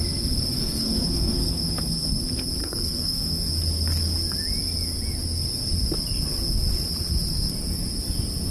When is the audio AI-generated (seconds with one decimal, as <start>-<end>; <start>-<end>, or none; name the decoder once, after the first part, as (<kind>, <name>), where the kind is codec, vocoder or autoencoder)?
0.6-2.2 (codec, SNAC); 2.6-3.5